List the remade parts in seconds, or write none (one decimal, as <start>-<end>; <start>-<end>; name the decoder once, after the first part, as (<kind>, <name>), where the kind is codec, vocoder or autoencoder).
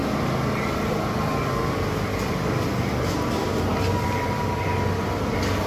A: none